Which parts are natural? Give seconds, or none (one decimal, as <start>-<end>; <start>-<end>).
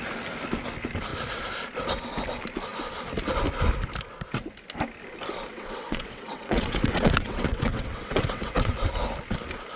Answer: 0.0-5.5; 8.7-9.8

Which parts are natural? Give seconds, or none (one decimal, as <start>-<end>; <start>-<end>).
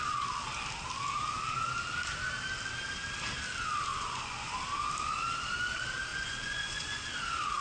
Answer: 0.0-3.9; 4.6-6.1; 7.1-7.6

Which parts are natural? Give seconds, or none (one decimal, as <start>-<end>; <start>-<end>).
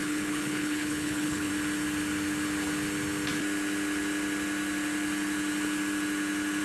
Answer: 1.5-6.6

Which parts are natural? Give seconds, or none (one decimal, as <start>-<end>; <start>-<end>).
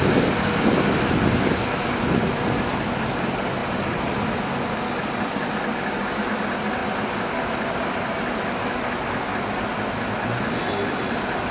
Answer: 0.0-11.5